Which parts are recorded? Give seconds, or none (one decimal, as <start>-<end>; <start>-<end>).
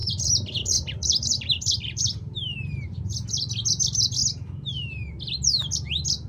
3.0-6.3